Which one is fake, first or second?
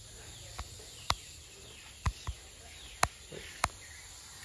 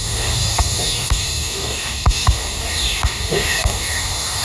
second